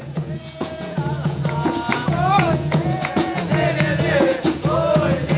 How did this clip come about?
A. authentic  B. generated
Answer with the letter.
B